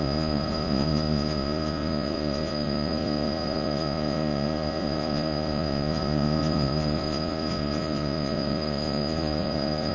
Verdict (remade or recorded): remade